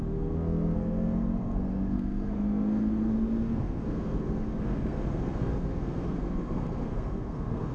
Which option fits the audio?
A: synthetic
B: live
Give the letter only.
A